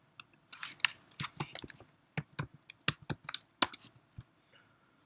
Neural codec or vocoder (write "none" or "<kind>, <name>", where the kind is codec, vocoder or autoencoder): none